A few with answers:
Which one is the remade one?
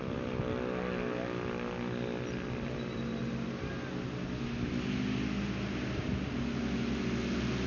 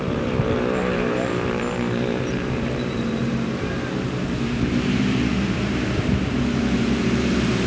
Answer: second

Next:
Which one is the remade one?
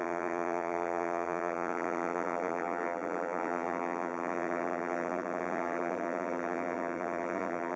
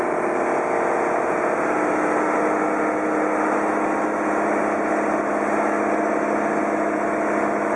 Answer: first